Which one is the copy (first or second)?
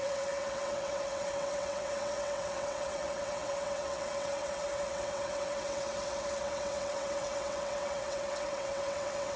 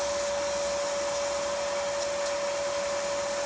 first